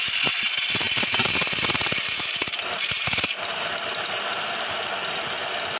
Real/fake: fake